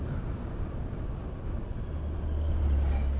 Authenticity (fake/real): real